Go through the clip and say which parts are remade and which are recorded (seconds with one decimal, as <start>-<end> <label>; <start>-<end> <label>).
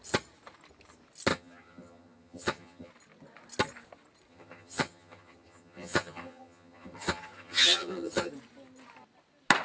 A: 0.0-1.3 recorded; 1.3-2.9 remade; 2.9-4.3 recorded; 4.3-8.3 remade; 8.3-9.6 recorded